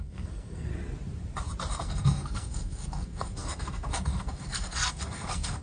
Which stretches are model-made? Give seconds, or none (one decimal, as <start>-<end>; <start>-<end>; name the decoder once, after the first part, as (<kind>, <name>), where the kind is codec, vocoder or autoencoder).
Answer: 0.0-0.7 (codec, SNAC); 1.7-5.6